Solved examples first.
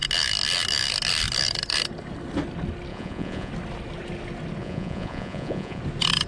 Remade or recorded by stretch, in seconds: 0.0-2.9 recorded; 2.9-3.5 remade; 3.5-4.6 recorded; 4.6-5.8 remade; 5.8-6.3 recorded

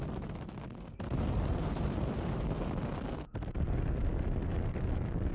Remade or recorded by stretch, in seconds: 0.0-1.5 recorded; 1.5-2.4 remade; 2.4-5.3 recorded

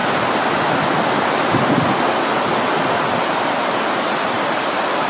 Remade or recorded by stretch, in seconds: 0.0-5.1 recorded

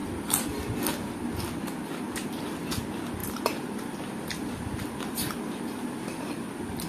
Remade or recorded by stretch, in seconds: 0.0-0.8 remade; 0.8-3.2 recorded; 3.2-6.5 remade; 6.5-6.9 recorded

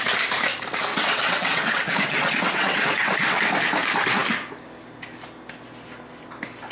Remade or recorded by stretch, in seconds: 0.0-0.9 recorded; 0.9-3.4 remade; 3.4-6.7 recorded

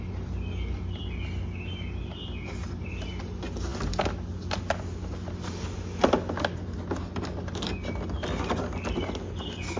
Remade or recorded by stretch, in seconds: 0.0-9.8 recorded